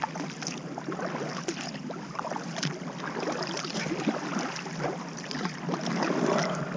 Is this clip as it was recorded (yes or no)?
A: yes